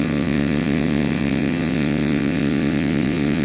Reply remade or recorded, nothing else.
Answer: remade